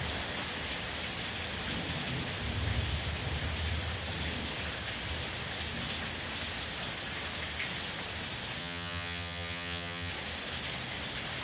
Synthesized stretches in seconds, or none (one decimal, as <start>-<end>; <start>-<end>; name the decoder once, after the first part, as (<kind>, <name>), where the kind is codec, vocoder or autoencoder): 8.6-10.1 (vocoder, HiFi-GAN)